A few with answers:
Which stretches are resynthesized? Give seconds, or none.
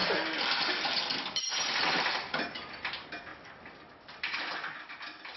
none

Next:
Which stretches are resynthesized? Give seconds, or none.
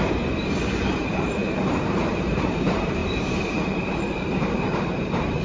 0.0-5.4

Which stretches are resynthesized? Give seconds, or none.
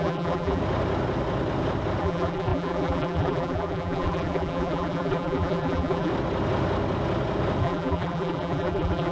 0.0-0.6; 2.0-6.1; 7.6-9.1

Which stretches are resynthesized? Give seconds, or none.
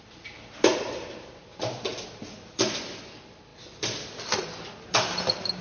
none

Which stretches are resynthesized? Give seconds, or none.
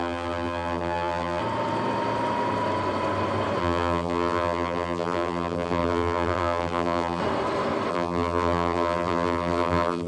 0.0-1.4; 3.6-7.2; 7.9-10.1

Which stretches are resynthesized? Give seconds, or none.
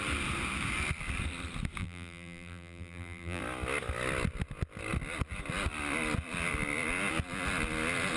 1.8-3.4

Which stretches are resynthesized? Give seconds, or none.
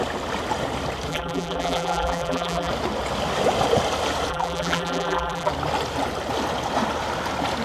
1.1-2.7; 4.3-5.5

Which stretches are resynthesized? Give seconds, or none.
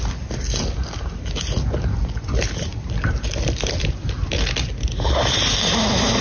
2.7-4.7